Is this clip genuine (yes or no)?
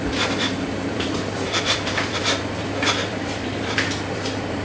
no